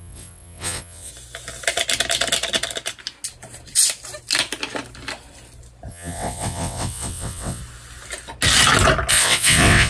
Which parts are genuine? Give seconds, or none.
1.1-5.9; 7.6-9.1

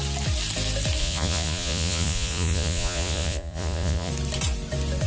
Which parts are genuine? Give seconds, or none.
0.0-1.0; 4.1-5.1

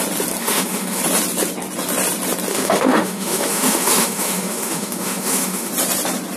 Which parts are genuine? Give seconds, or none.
0.0-0.4; 1.0-2.5; 5.7-6.4

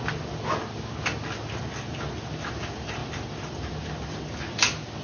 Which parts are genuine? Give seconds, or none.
0.0-5.0